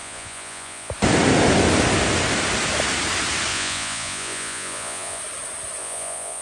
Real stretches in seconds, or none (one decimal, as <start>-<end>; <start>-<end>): 0.9-3.5; 5.2-5.8